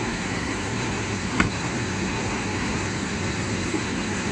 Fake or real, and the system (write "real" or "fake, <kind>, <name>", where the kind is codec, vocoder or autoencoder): fake, codec, SNAC